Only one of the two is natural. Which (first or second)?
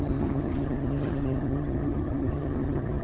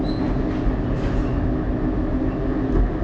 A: second